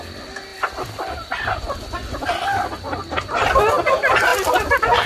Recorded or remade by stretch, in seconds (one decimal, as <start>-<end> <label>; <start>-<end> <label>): 0.0-5.1 recorded